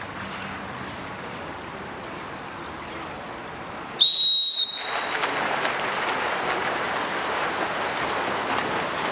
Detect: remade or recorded recorded